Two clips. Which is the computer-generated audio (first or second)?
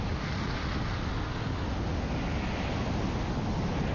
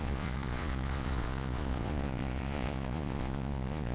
second